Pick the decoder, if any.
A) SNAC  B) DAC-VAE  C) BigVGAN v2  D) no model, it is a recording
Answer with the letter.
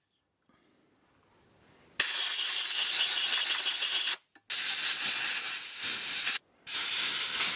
D